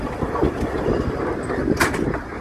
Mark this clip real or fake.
real